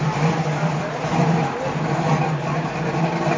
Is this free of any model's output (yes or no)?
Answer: yes